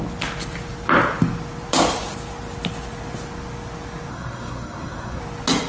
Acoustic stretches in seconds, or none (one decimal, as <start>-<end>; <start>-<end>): 0.0-4.1; 5.2-5.7